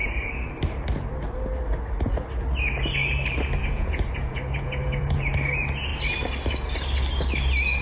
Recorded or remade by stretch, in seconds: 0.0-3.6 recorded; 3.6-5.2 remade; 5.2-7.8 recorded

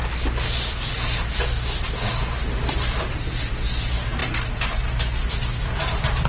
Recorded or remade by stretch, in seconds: 0.0-6.3 recorded